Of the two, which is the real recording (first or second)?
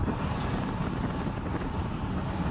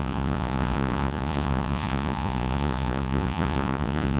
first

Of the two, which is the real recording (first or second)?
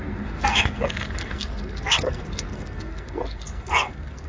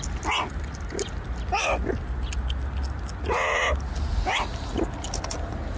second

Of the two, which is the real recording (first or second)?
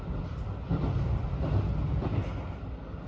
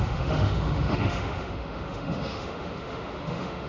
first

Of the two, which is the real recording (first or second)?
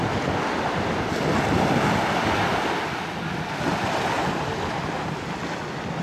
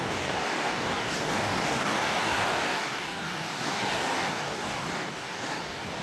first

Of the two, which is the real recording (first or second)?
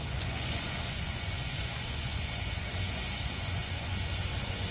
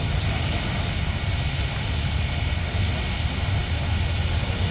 second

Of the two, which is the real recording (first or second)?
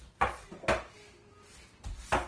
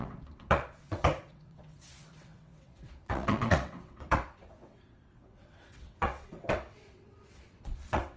first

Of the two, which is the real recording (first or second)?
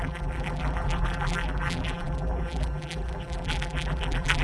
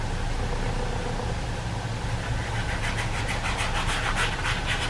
second